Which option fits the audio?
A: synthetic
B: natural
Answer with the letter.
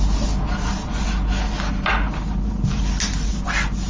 B